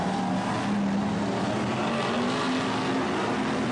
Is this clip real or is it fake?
real